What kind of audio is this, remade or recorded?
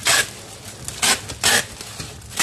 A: recorded